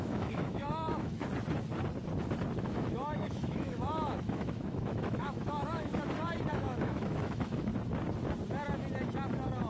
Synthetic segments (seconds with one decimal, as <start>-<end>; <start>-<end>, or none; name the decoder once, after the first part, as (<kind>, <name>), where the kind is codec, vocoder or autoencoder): 0.0-1.2 (autoencoder, DAC-VAE); 2.6-5.9; 6.5-7.7